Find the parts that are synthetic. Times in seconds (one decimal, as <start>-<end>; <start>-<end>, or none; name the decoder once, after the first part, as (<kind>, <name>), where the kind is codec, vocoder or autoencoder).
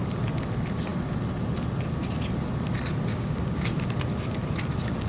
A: 3.1-3.7 (codec, DAC)